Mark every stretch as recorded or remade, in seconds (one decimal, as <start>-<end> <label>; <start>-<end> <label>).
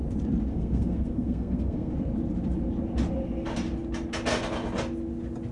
0.0-0.5 recorded; 0.5-1.9 remade; 1.9-5.5 recorded